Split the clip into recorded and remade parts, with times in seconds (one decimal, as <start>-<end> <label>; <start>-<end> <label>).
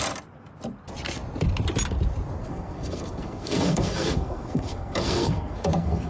0.0-2.4 recorded; 2.4-6.1 remade